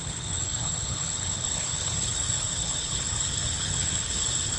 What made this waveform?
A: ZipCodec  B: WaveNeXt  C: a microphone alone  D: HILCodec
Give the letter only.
D